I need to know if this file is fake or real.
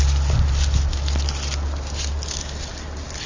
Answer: real